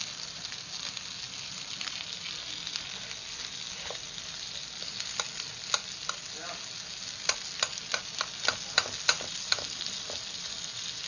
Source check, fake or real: real